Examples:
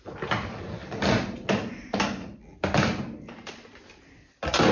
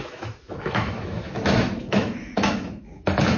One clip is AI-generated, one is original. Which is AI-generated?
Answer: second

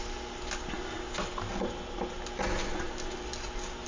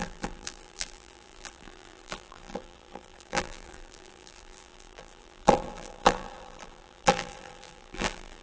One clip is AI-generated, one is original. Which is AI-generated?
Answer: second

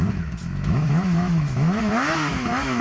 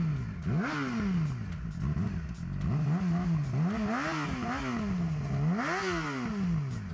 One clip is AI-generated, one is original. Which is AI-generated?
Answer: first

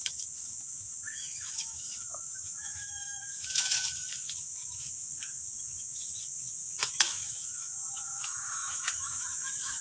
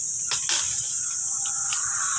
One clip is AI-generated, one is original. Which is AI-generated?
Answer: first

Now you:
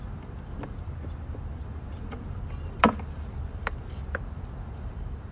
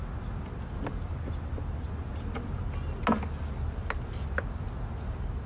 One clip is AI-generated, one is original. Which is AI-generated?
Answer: first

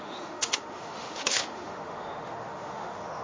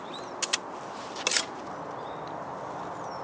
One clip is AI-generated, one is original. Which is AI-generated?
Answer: first